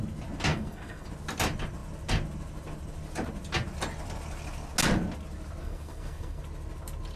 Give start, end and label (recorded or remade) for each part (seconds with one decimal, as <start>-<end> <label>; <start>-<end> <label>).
0.0-0.5 recorded; 0.5-1.1 remade; 1.1-5.6 recorded; 5.6-6.4 remade; 6.4-7.2 recorded